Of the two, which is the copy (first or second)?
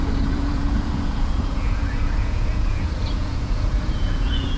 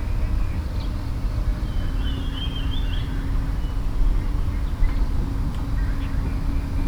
first